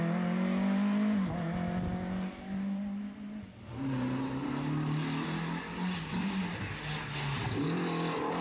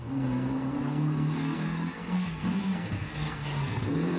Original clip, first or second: first